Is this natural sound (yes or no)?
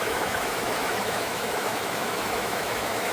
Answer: no